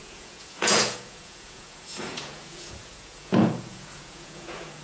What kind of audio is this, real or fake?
fake